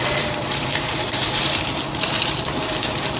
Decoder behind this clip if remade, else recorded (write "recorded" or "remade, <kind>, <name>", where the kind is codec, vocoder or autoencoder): remade, vocoder, BigVGAN v2